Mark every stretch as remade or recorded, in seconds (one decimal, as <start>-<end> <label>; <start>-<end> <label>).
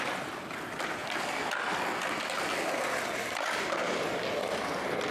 0.0-5.1 recorded